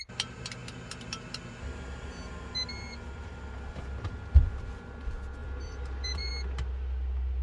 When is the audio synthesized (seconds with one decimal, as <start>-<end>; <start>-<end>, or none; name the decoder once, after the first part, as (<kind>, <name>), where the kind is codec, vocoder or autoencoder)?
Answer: 5.4-6.3 (vocoder, BigVGAN v2)